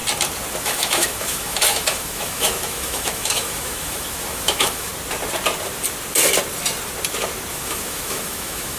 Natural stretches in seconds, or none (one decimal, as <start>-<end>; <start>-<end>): 0.0-0.6; 4.9-7.5